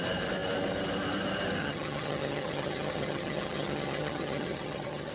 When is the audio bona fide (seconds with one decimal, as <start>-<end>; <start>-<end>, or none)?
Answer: 0.0-1.6